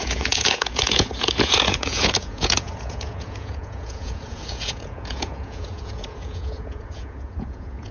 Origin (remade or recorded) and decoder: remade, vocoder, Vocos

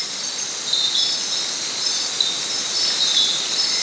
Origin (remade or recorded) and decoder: recorded